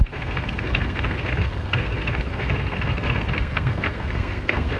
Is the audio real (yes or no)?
no